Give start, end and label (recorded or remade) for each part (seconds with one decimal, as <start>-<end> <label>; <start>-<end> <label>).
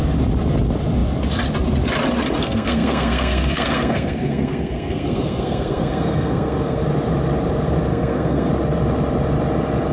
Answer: 0.0-2.4 recorded; 2.4-6.8 remade; 6.8-7.9 recorded; 7.9-8.5 remade; 8.5-9.9 recorded